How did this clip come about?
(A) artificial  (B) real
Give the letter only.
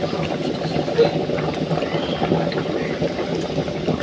B